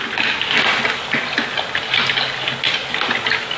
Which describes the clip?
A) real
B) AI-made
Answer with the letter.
A